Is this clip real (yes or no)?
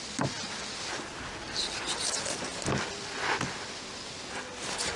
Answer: yes